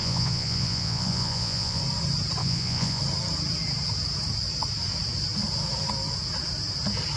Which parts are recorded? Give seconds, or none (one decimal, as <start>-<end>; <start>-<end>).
1.8-2.4; 3.0-7.2